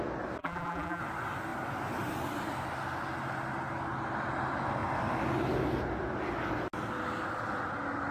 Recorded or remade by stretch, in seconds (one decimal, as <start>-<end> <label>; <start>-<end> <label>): 0.0-0.4 recorded; 0.4-1.0 remade; 1.0-8.1 recorded